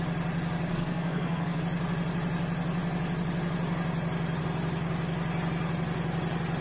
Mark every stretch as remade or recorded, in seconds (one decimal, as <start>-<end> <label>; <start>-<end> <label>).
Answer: 0.0-0.7 recorded; 0.7-1.6 remade; 1.6-6.6 recorded

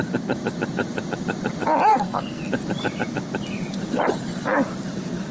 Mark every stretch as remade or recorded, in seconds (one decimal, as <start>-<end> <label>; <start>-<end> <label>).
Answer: 0.0-1.9 recorded; 1.9-2.5 remade; 2.5-5.3 recorded

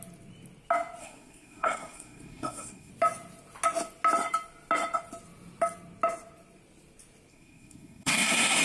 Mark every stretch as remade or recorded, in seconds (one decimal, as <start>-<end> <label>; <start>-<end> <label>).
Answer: 0.0-1.0 recorded; 1.0-2.9 remade; 2.9-7.3 recorded; 7.3-8.6 remade